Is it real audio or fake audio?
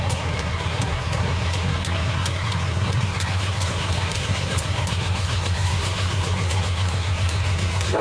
fake